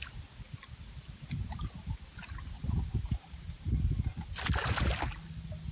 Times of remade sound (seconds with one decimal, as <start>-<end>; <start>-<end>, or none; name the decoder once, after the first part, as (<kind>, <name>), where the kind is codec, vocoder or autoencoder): 2.1-4.2 (vocoder, BigVGAN v2)